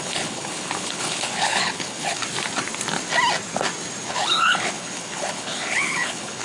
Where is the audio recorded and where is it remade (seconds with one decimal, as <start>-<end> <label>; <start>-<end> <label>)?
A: 0.0-2.2 remade; 2.2-4.1 recorded; 4.1-6.4 remade